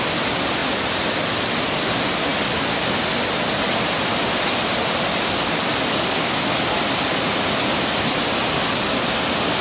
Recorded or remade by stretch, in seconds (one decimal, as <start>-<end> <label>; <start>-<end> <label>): 0.0-9.6 recorded